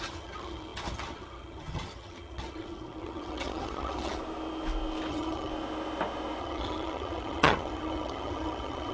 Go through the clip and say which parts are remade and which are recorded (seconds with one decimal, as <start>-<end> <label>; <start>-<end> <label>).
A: 0.0-4.2 remade; 4.2-5.1 recorded; 5.1-5.5 remade; 5.5-6.4 recorded; 6.4-8.9 remade